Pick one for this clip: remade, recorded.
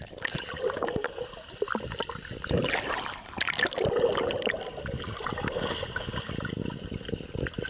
recorded